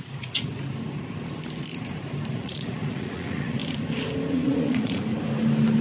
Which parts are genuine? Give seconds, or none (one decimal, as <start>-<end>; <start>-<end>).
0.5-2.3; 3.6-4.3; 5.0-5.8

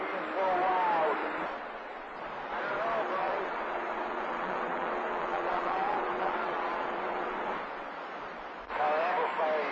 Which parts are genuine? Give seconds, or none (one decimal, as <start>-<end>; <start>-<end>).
0.0-1.2; 2.2-3.2; 7.9-9.7

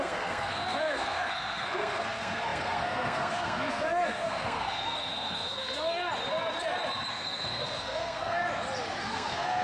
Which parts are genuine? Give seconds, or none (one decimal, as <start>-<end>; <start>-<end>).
6.0-7.1; 8.4-9.0

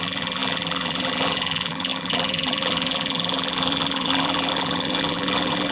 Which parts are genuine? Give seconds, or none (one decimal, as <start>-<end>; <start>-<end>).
none